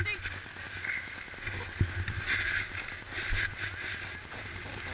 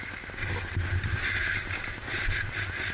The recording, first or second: first